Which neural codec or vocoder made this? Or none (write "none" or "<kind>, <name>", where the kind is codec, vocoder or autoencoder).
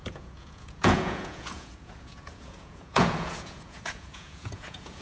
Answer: vocoder, Vocos